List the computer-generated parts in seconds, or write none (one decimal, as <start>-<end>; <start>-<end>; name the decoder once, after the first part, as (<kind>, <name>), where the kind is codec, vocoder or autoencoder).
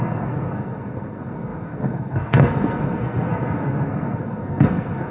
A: 0.0-5.1 (codec, SNAC)